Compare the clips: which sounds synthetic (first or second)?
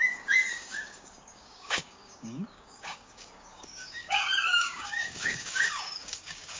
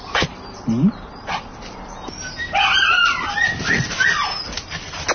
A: first